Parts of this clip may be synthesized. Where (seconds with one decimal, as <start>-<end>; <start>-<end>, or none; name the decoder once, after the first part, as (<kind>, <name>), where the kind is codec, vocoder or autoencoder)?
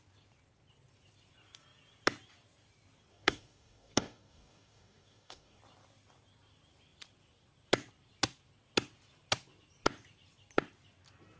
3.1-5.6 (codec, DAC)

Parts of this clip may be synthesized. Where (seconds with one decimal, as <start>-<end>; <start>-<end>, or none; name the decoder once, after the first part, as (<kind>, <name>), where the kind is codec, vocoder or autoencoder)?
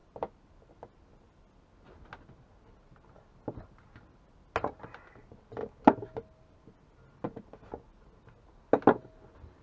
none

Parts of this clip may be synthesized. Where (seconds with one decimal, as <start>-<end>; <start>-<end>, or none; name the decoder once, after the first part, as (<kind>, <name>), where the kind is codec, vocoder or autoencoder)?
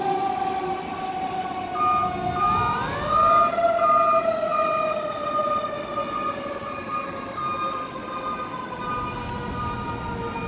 none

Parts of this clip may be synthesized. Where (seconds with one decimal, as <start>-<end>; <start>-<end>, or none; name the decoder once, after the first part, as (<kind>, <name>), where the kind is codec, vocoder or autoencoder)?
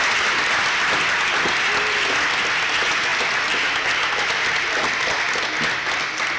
none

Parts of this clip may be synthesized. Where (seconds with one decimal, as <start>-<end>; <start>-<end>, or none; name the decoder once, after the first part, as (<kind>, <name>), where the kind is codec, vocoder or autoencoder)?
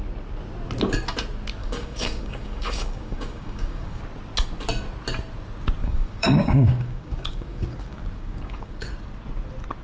1.6-4.0 (codec, DAC); 5.8-8.9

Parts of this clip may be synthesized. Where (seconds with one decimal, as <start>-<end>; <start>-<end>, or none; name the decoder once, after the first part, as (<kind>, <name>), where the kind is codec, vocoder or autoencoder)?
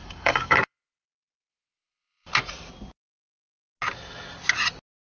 0.0-2.3 (codec, DAC)